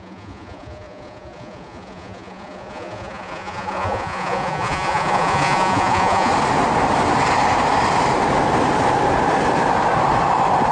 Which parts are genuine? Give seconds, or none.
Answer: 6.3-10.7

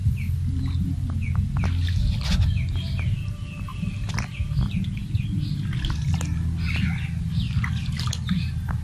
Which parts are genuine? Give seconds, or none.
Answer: 0.0-8.8

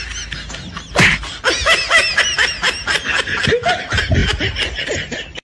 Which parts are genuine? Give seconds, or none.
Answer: 0.0-5.4